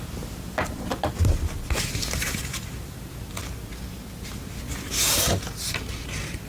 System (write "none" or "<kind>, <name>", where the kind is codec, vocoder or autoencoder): none